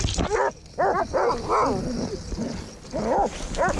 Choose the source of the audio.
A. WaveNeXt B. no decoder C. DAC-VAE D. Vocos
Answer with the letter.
B